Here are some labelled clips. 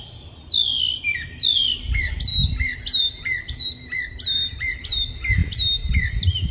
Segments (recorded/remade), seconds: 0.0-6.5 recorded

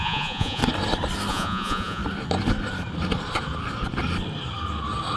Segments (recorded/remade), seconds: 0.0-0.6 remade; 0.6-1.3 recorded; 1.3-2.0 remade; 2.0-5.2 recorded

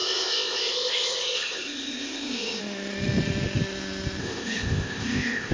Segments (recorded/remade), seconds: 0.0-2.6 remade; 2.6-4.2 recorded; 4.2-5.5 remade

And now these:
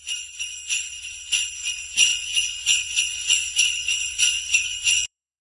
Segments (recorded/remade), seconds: 0.0-2.1 recorded; 2.1-5.4 remade

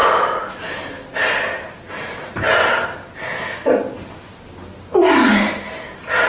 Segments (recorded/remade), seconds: 0.0-6.3 recorded